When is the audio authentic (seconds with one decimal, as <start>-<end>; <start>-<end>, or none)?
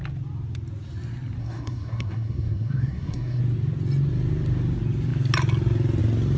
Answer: 0.0-1.4; 3.4-6.4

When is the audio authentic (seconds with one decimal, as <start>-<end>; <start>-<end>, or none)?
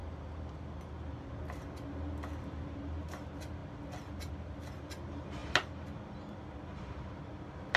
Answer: 0.0-7.8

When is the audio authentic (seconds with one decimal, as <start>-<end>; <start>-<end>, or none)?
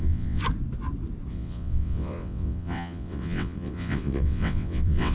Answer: 0.4-1.3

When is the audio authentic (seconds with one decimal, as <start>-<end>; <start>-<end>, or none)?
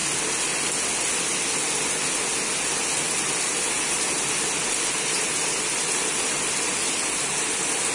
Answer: 0.0-7.9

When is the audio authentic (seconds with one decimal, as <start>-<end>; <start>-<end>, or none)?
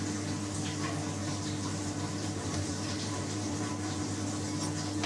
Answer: 0.0-1.2; 4.3-5.1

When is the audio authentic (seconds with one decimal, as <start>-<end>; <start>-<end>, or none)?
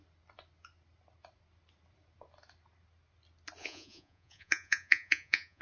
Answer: 0.0-3.6